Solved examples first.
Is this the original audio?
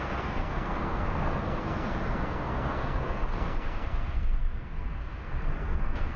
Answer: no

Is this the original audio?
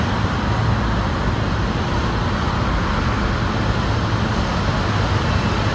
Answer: yes